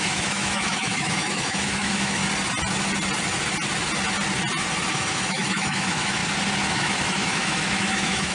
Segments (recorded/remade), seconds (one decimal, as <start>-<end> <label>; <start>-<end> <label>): 0.0-2.2 remade; 2.2-4.9 recorded; 4.9-6.2 remade; 6.2-6.7 recorded; 6.7-8.3 remade